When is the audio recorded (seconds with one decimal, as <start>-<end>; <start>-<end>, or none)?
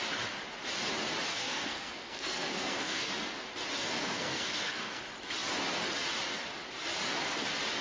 0.0-1.3; 3.1-4.0; 5.0-7.8